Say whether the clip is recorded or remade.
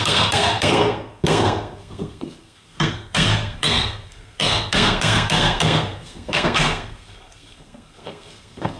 remade